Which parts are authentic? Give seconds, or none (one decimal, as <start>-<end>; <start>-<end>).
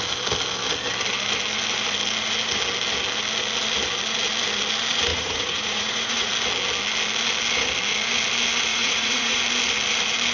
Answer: 0.0-5.1; 6.3-8.7; 9.4-10.3